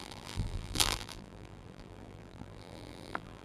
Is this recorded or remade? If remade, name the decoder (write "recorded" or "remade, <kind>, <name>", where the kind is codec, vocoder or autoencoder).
remade, vocoder, BigVGAN v2